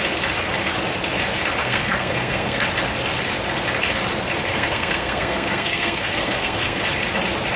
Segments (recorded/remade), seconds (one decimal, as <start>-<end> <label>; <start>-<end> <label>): 0.0-1.6 recorded; 1.6-2.7 remade; 2.7-4.5 recorded; 4.5-6.8 remade; 6.8-7.6 recorded